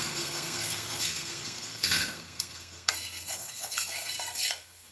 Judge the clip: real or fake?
fake